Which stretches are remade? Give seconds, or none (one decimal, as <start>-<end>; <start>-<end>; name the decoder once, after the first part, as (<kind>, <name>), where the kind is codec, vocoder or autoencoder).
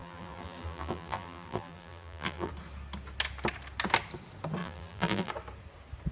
0.0-2.5 (vocoder, BigVGAN v2); 4.6-5.3